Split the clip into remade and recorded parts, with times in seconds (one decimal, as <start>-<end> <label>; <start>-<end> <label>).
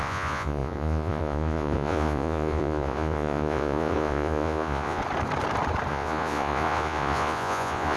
0.0-5.0 remade; 5.0-5.9 recorded; 5.9-8.0 remade